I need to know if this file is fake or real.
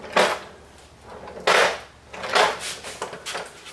real